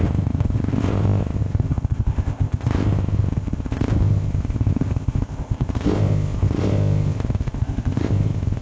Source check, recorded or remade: remade